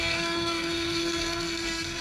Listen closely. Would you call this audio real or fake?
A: fake